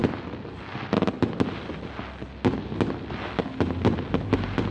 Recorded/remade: recorded